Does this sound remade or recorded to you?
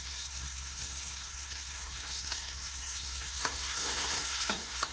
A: remade